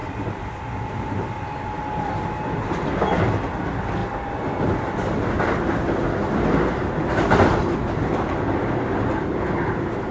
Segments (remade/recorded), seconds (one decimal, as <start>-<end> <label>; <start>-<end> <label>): 0.0-10.1 recorded